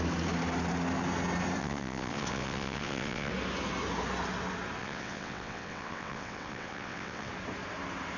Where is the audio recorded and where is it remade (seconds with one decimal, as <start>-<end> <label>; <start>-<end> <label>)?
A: 0.0-1.6 recorded; 1.6-3.3 remade; 3.3-4.8 recorded; 4.8-7.3 remade; 7.3-8.2 recorded